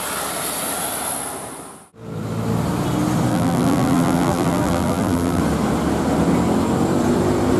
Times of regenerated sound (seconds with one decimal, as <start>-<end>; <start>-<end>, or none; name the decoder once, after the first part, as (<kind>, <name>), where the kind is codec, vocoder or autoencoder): 3.3-5.4 (vocoder, BigVGAN v2)